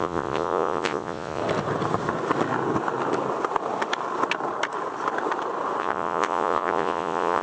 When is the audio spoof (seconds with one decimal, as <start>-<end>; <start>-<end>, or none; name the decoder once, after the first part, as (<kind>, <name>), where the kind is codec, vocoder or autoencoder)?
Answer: 0.0-1.4 (vocoder, Vocos); 5.8-7.4